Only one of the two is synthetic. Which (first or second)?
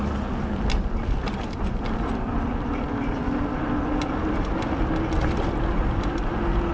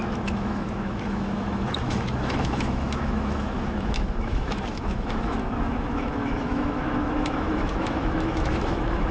second